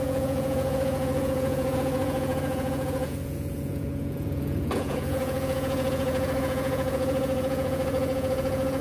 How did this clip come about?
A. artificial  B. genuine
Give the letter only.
A